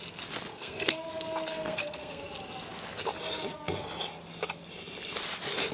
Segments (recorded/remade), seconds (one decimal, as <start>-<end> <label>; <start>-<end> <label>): 0.0-0.5 recorded; 0.5-1.1 remade; 1.1-1.5 recorded; 1.5-2.2 remade; 2.2-5.7 recorded